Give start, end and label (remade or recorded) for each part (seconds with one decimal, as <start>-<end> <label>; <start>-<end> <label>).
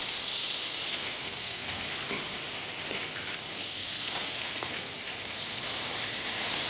0.0-0.9 recorded; 0.9-1.8 remade; 1.8-3.6 recorded; 3.6-4.9 remade; 4.9-6.7 recorded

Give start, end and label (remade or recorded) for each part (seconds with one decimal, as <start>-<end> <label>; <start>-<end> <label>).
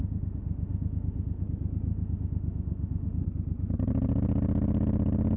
0.0-1.4 remade; 1.4-1.9 recorded; 1.9-3.2 remade; 3.2-5.4 recorded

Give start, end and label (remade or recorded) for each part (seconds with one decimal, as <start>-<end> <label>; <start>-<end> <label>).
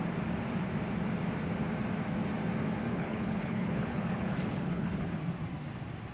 0.0-2.9 recorded; 2.9-5.1 remade; 5.1-6.1 recorded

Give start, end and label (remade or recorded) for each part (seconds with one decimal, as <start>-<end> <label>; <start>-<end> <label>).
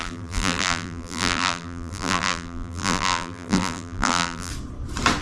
0.0-4.5 remade; 4.5-5.2 recorded